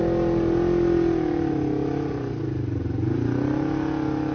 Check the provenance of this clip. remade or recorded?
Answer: recorded